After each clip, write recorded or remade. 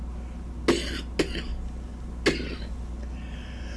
recorded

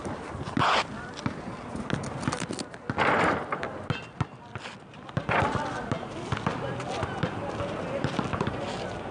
recorded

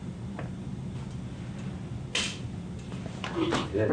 recorded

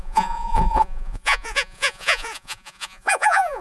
remade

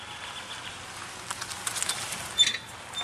recorded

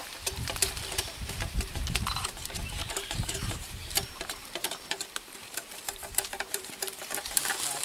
remade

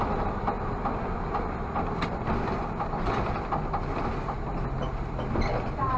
recorded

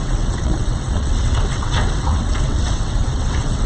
remade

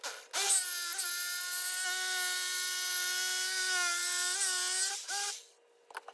recorded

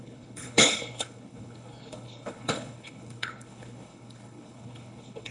remade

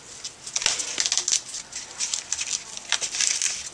recorded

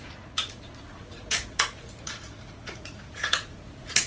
remade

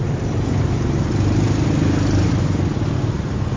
recorded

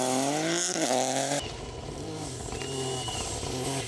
recorded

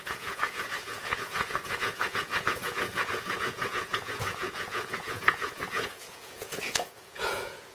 remade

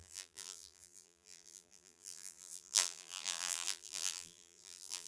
remade